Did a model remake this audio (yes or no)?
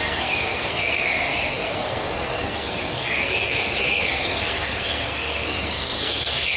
yes